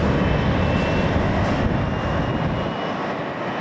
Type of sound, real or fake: real